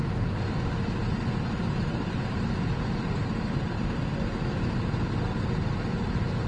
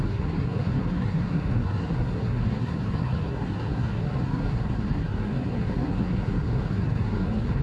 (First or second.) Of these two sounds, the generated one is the second